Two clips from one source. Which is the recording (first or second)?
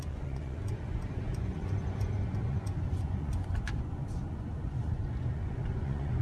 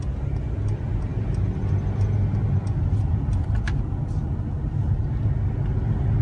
second